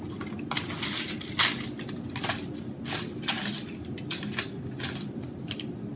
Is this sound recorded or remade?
recorded